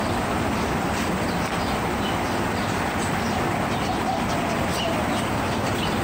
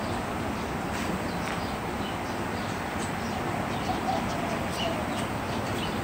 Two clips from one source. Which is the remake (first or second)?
first